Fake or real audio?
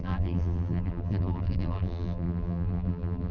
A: fake